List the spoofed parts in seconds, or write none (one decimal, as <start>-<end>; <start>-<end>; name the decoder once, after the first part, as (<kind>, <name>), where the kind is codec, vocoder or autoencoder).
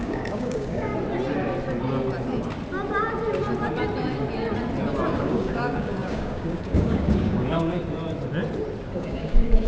0.0-0.9 (codec, DAC); 5.2-7.8; 8.9-9.7